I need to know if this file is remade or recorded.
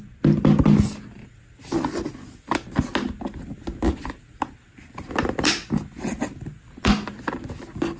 recorded